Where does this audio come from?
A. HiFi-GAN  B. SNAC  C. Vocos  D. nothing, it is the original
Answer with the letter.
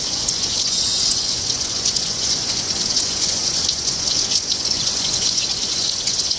C